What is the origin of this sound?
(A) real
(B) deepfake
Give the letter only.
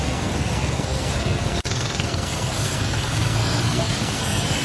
B